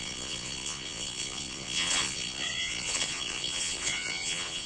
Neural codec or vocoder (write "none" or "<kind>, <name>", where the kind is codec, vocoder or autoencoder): vocoder, Vocos